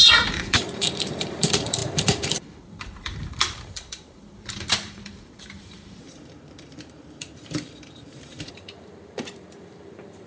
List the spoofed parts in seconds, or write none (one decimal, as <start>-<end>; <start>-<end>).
0.0-10.3